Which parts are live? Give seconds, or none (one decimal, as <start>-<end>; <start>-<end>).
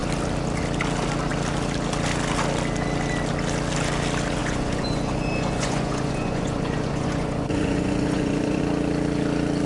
0.0-4.4; 8.6-9.7